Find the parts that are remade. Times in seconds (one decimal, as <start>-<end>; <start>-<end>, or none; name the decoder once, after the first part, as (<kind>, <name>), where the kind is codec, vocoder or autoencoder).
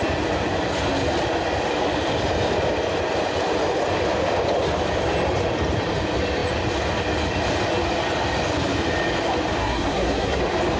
9.6-10.4 (codec, SNAC)